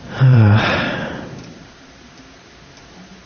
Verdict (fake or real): fake